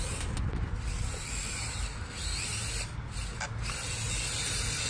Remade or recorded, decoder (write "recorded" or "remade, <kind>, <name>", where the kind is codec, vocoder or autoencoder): recorded